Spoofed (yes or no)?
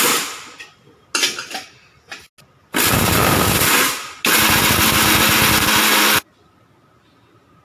no